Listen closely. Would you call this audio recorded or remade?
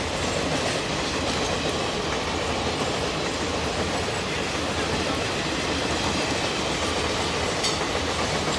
recorded